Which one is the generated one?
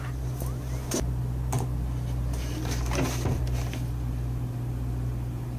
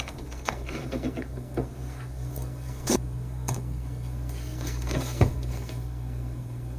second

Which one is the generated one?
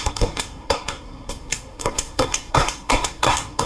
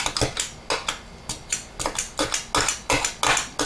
first